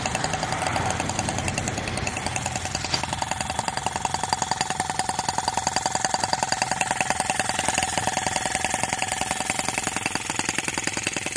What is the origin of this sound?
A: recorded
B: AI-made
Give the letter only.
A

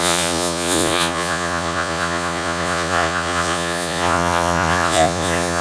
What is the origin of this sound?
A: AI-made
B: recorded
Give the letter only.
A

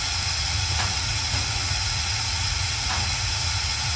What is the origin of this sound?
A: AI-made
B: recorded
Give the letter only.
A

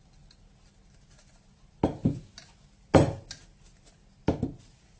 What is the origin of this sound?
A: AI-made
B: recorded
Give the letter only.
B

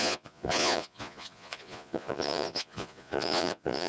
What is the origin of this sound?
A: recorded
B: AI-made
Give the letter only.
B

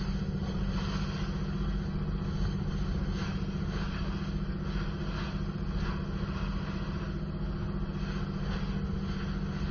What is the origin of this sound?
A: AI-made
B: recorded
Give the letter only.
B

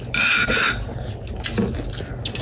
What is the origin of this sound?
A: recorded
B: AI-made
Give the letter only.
A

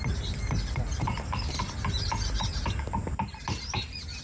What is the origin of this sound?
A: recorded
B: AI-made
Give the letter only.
A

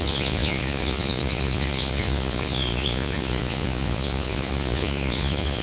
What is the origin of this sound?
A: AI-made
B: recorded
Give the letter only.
A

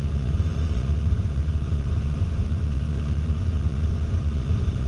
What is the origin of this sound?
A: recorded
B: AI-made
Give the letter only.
B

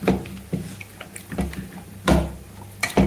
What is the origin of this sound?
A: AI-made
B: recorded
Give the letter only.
B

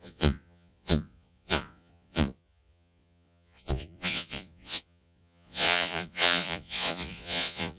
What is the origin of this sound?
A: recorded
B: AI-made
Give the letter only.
B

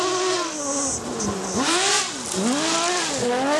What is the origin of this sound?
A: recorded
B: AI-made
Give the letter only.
A